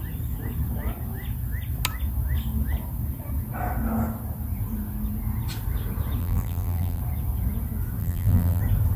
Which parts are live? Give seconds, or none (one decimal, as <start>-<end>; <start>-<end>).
0.0-6.2; 7.0-8.0; 8.6-9.0